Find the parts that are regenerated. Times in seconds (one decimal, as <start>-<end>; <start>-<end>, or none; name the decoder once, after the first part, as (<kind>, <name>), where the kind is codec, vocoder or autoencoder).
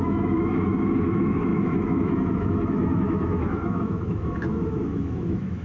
0.0-5.6 (autoencoder, DAC-VAE)